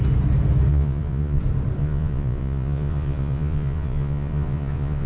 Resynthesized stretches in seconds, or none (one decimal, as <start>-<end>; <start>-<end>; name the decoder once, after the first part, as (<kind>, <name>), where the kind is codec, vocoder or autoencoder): 0.7-1.4 (vocoder, Vocos); 1.8-5.1